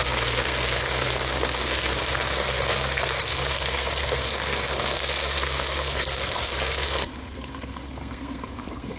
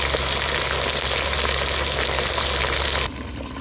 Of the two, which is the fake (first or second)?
first